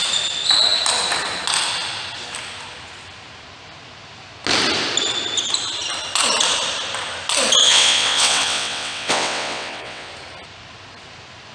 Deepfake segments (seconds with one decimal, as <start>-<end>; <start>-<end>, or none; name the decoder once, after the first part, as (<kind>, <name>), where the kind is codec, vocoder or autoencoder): 7.6-10.1 (vocoder, WaveNeXt)